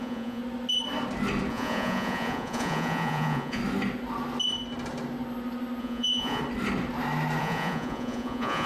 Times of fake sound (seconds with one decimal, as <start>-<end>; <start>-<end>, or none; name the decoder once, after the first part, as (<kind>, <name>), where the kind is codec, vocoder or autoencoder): 0.0-0.4 (vocoder, Vocos); 1.5-3.6; 5.8-6.4; 7.4-8.7